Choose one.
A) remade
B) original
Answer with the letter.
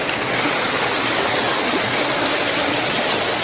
B